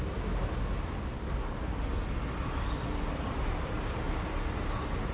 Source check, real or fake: real